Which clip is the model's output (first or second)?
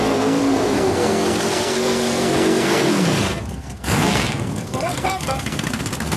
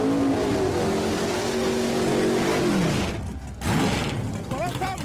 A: first